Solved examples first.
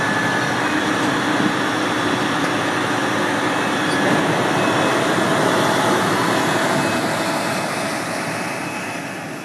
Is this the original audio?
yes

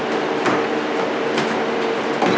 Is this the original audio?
yes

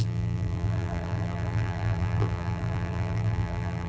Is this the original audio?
no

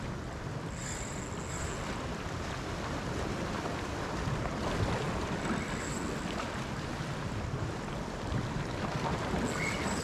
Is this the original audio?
yes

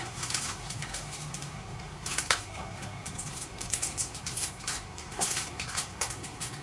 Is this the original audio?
no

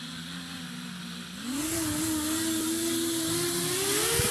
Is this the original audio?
yes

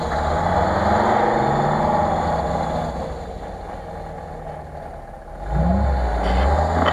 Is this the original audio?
yes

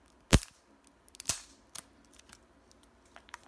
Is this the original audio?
yes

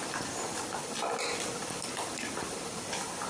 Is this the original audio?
yes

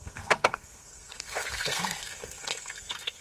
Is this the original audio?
no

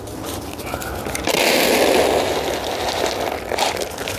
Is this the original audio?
yes